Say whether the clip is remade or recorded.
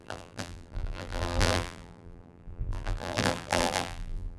remade